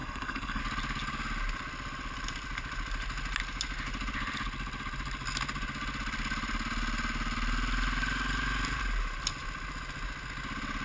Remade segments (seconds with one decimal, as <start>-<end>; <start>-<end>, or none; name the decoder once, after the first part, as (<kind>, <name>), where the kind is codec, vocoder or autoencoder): 0.0-0.6 (codec, SNAC)